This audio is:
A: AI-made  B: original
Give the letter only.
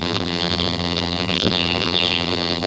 A